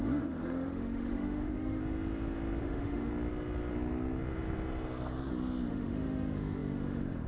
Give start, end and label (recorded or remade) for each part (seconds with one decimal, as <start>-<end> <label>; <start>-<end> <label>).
0.0-1.8 remade; 1.8-2.6 recorded; 2.6-3.1 remade; 3.1-5.7 recorded; 5.7-7.3 remade